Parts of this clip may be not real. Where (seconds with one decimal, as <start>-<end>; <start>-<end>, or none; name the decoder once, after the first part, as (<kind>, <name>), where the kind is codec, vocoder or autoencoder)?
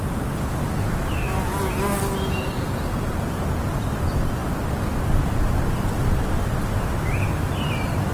none